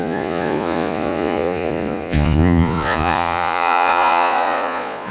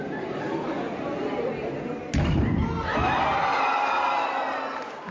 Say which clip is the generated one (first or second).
first